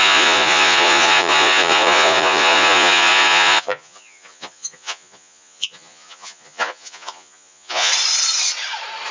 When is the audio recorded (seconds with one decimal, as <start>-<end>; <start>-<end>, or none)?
7.9-9.1